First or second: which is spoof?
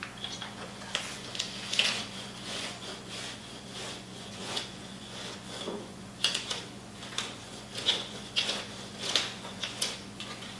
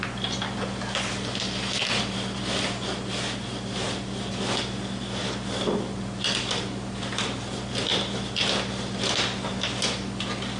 first